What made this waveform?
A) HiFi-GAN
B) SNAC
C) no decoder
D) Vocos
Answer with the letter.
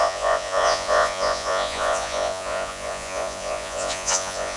D